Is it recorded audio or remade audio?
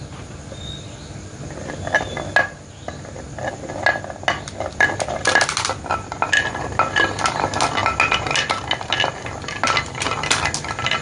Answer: recorded